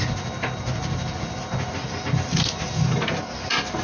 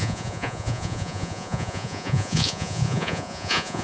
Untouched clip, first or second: first